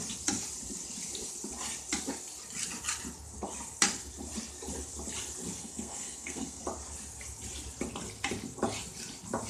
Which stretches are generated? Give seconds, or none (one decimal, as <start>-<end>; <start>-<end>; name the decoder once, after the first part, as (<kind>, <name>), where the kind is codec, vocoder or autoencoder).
5.6-6.6 (codec, SNAC)